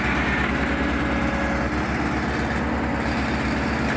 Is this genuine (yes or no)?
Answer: yes